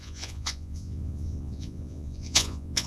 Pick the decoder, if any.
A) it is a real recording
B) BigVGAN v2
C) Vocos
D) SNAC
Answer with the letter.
C